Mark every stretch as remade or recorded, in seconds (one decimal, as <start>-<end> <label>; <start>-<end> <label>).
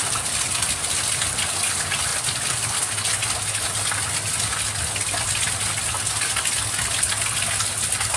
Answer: 0.0-8.2 recorded